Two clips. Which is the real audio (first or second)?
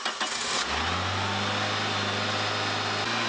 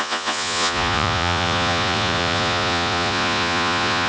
first